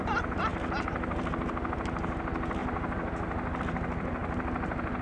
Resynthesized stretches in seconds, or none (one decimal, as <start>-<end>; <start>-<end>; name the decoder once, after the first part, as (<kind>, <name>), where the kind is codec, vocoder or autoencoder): none